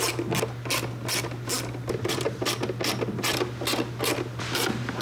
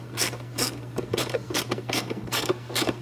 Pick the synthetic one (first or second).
second